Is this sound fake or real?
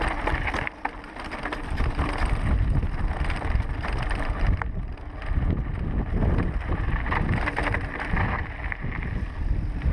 real